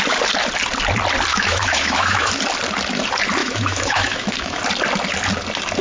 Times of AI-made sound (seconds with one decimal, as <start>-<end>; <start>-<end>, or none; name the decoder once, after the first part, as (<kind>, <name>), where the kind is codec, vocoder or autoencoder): 1.3-2.3 (autoencoder, DAC-VAE); 3.4-4.6